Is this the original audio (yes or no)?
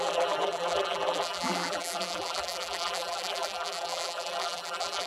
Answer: no